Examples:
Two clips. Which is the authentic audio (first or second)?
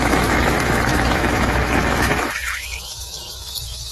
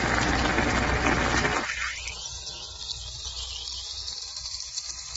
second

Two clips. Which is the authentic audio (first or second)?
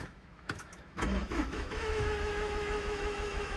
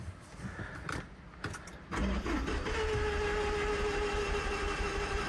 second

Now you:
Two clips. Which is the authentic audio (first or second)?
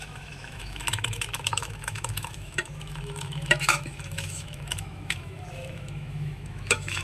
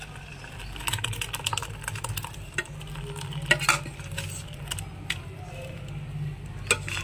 second